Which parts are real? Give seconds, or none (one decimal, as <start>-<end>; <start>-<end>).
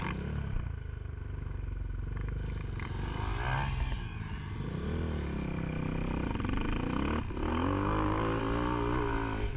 0.0-7.5; 8.4-9.6